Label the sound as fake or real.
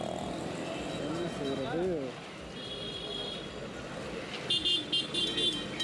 real